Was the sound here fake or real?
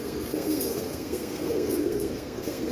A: fake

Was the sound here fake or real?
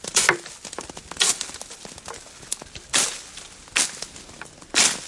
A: real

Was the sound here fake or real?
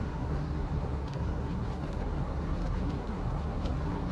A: fake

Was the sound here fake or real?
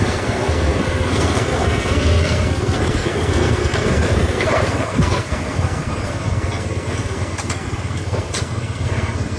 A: fake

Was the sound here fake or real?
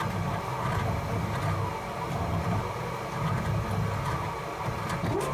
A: real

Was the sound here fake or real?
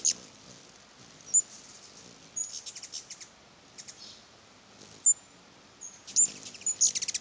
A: real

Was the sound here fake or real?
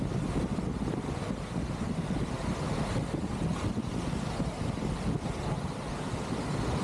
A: real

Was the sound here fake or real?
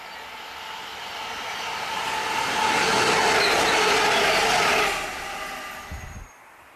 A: real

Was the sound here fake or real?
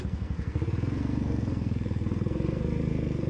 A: fake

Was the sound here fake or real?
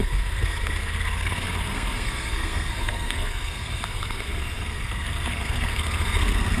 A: fake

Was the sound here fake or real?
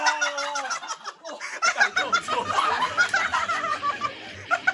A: real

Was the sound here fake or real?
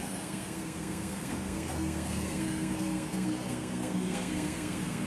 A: fake